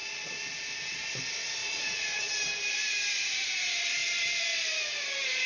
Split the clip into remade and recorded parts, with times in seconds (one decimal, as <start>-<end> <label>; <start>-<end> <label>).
0.0-1.6 recorded; 1.6-2.3 remade; 2.3-5.5 recorded